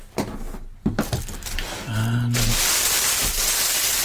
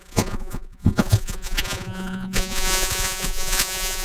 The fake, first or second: second